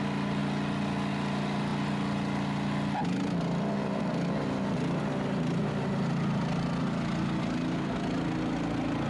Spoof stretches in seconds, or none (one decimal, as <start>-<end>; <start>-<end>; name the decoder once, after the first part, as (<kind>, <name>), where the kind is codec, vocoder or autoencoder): none